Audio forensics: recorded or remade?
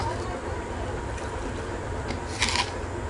recorded